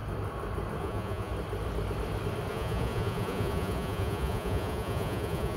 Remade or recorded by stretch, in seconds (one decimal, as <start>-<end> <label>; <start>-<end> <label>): 0.0-0.8 recorded; 0.8-1.3 remade; 1.3-2.5 recorded; 2.5-5.6 remade